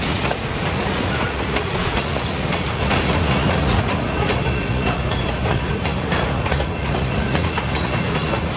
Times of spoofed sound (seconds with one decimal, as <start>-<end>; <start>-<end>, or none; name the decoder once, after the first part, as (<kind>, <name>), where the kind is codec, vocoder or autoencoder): 0.0-8.6 (vocoder, Vocos)